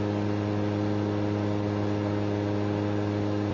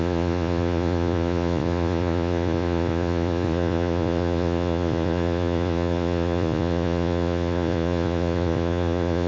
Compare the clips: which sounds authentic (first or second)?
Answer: first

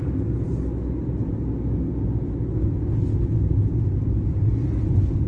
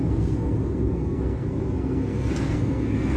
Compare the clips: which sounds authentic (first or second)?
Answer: first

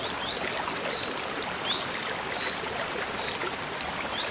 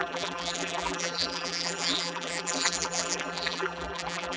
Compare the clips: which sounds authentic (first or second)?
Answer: first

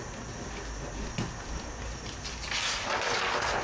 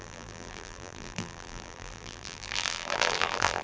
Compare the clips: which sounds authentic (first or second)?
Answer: first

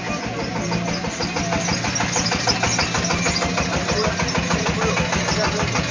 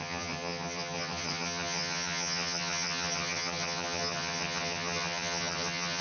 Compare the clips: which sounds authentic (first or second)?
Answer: first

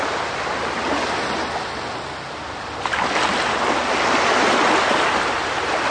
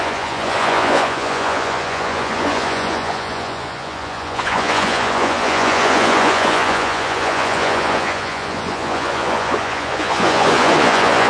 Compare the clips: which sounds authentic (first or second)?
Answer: first